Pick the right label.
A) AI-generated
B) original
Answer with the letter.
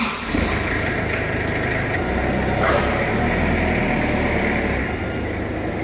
B